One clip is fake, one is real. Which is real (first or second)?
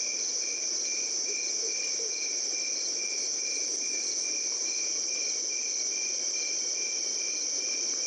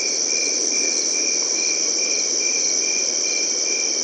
second